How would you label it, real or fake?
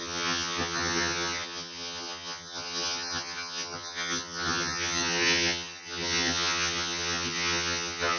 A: fake